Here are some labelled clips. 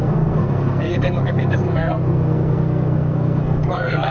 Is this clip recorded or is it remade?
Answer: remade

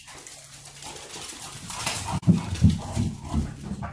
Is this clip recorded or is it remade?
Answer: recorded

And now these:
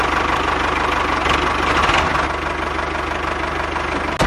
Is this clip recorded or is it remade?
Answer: recorded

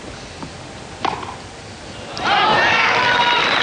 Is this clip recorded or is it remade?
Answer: recorded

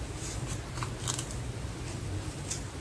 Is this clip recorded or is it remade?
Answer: recorded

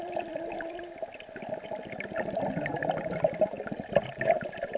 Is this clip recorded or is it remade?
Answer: recorded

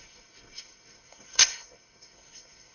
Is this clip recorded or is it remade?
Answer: remade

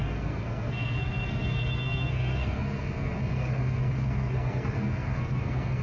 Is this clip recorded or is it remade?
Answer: remade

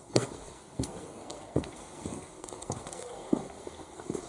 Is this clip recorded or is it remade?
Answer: remade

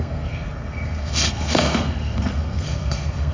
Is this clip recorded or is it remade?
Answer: remade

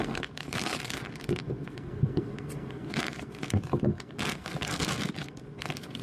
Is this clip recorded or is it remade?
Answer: remade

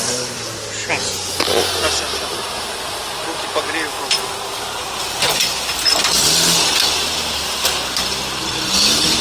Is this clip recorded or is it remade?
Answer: recorded